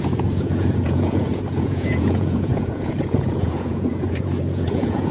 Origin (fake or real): fake